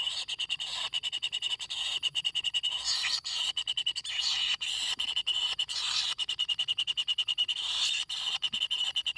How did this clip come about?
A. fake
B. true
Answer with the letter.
B